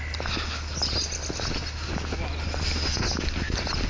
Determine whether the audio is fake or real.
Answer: real